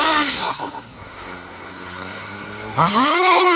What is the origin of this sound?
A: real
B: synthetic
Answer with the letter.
B